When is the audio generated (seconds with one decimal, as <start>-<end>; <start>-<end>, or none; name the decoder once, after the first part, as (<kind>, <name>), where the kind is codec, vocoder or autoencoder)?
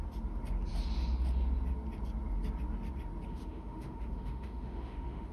3.3-5.3 (autoencoder, DAC-VAE)